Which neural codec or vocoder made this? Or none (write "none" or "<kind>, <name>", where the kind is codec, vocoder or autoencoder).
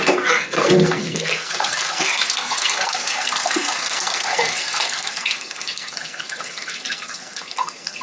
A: codec, SNAC